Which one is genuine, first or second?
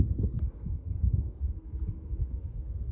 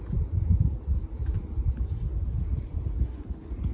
second